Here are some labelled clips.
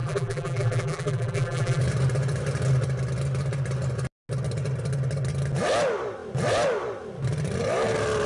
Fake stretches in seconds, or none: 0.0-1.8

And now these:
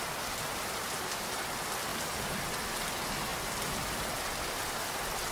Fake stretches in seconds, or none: 0.5-1.4

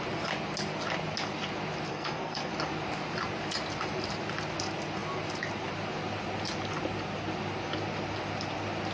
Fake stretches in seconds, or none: 1.9-2.5

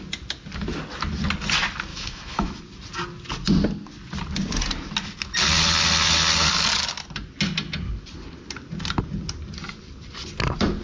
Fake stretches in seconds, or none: 1.9-2.6

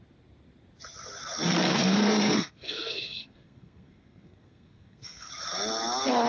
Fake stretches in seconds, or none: 1.7-5.3

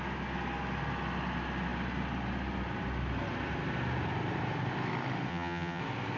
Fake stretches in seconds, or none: 5.3-5.8